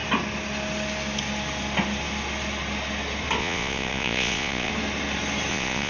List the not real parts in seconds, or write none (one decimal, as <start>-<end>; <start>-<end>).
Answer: 3.4-4.7; 5.5-5.9

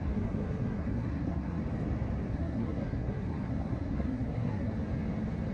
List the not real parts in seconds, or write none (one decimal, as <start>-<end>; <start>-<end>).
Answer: 0.0-1.6; 2.3-4.7

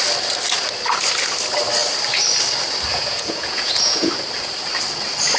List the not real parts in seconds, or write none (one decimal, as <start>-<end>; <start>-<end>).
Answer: 2.9-4.1

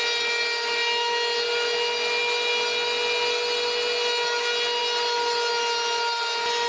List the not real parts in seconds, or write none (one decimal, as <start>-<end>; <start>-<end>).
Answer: none

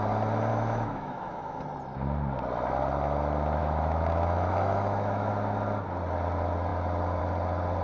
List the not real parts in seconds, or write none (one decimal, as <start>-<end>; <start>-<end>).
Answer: 0.5-1.6; 3.6-5.3

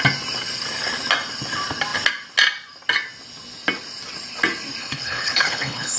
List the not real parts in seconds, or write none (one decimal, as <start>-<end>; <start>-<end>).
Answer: 4.8-6.0